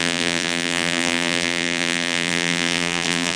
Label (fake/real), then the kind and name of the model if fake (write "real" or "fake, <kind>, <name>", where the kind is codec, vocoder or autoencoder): fake, vocoder, BigVGAN v2